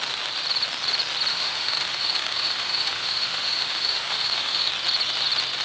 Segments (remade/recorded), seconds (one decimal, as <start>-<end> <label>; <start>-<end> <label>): 0.0-1.3 recorded; 1.3-4.7 remade; 4.7-5.6 recorded